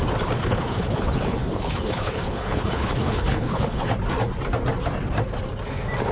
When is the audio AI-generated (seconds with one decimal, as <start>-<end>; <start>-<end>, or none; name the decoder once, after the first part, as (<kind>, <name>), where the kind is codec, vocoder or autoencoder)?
0.4-3.9 (codec, HILCodec)